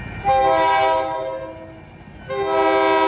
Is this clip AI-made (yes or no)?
no